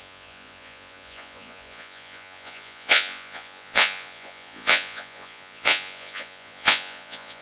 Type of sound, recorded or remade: remade